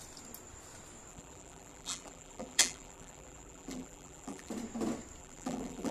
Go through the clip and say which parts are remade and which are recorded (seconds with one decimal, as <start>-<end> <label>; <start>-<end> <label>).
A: 0.0-1.1 recorded; 1.1-4.5 remade; 4.5-5.2 recorded; 5.2-5.9 remade